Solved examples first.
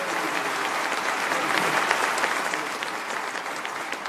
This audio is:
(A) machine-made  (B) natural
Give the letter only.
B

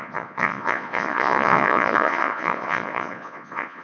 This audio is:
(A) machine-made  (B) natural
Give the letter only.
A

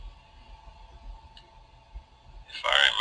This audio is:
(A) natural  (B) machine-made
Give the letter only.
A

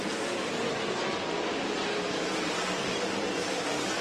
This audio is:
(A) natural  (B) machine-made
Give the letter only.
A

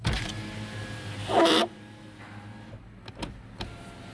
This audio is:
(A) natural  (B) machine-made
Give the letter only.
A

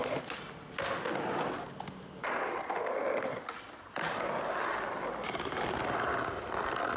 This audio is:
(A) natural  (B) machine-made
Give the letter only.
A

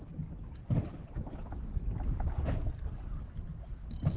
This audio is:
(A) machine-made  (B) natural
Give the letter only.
B